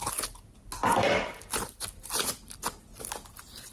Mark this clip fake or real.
real